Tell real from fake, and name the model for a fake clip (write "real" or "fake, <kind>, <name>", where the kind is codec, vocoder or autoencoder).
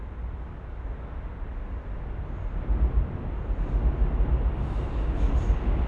real